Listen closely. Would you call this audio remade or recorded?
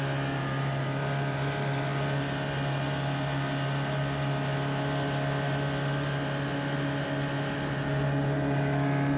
recorded